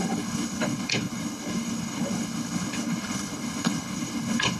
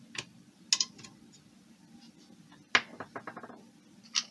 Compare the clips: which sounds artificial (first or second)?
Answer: first